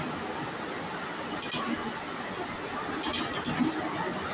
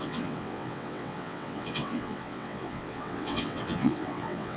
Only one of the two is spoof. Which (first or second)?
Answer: second